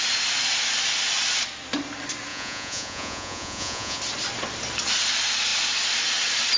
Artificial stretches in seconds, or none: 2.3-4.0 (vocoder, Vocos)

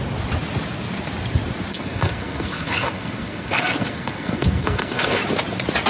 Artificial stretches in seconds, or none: 1.7-5.2 (codec, SNAC)

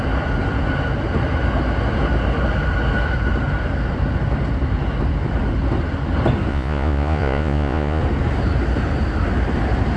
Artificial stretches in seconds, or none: 6.5-8.0 (vocoder, Vocos)

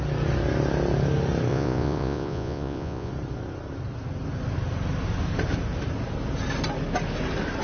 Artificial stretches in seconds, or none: 1.5-3.1 (vocoder, Vocos)

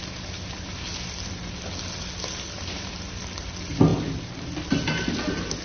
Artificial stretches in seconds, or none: none